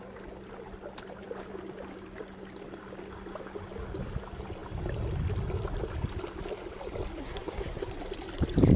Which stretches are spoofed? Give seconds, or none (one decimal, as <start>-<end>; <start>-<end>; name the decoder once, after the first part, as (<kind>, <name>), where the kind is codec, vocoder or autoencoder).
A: 7.2-7.9 (codec, SNAC)